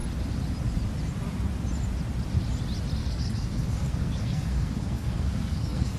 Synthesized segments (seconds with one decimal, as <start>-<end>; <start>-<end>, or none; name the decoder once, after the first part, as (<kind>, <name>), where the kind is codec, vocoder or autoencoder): 3.0-6.0 (codec, SNAC)